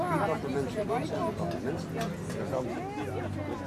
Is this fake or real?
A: real